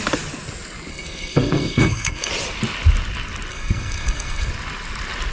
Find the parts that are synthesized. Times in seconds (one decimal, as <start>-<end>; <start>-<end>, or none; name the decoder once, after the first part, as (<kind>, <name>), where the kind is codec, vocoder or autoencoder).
0.9-2.3 (codec, SNAC); 3.5-4.5